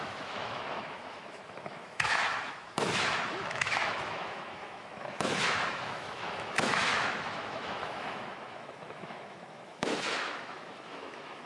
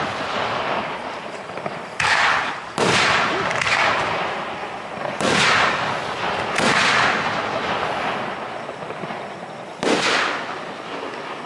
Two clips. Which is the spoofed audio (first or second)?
first